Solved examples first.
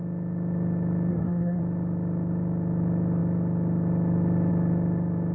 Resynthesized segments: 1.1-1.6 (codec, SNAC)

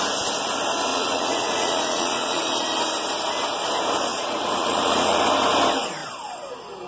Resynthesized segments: 0.9-2.4 (vocoder, Vocos); 4.1-5.2

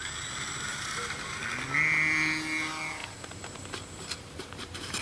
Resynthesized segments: 0.7-1.4 (vocoder, BigVGAN v2); 3.0-5.0

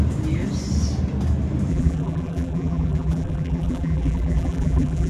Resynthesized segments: 1.7-5.1 (vocoder, BigVGAN v2)

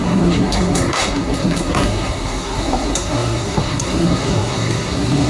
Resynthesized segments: 0.0-5.3 (codec, SNAC)

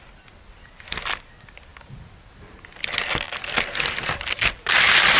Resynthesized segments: none